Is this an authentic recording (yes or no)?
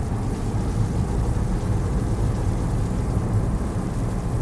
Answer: no